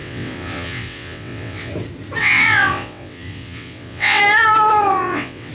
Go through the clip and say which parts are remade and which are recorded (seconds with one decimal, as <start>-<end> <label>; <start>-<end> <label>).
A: 0.0-1.7 remade; 1.7-2.2 recorded; 2.2-4.2 remade; 4.2-4.9 recorded; 4.9-5.5 remade